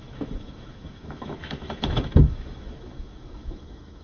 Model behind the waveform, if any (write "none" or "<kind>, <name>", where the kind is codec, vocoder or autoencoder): autoencoder, DAC-VAE